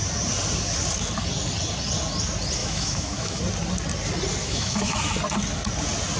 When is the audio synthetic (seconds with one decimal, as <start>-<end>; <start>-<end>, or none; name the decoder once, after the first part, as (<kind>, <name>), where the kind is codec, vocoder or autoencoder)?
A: 2.6-3.4 (autoencoder, DAC-VAE); 4.4-5.0